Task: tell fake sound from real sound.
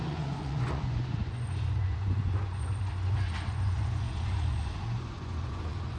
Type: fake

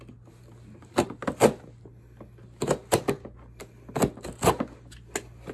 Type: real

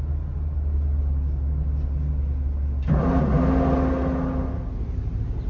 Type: real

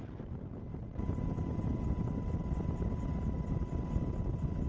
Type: real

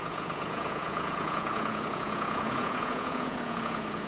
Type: fake